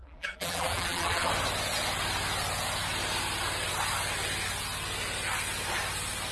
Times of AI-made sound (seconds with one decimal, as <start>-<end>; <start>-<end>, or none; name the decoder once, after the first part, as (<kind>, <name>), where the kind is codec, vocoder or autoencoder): 0.0-1.3 (vocoder, BigVGAN v2)